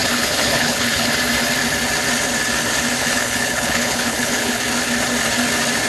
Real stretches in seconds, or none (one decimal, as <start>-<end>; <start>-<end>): 1.1-3.0; 4.6-5.9